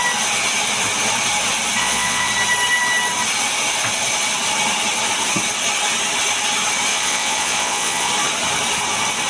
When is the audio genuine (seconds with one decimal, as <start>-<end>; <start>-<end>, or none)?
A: 0.0-1.8; 2.3-6.9; 8.1-9.3